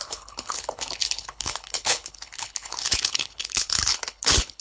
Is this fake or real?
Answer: fake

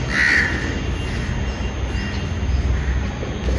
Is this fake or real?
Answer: real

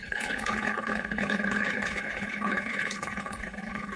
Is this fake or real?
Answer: fake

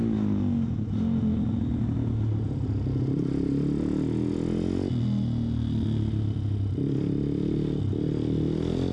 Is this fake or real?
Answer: real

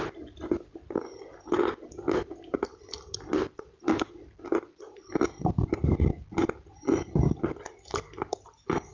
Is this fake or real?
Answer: real